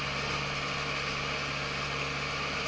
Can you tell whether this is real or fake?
real